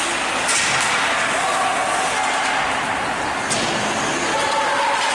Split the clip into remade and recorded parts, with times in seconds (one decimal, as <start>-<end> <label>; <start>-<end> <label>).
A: 0.0-5.1 recorded